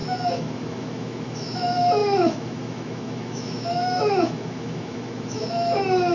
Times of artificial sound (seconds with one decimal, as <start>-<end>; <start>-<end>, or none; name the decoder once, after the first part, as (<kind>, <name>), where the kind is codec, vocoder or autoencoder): 0.0-6.1 (autoencoder, DAC-VAE)